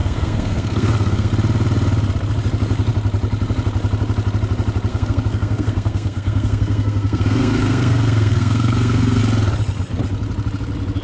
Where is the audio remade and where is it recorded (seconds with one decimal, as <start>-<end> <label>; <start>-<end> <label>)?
0.0-1.3 remade; 1.3-4.9 recorded; 4.9-9.2 remade; 9.2-11.0 recorded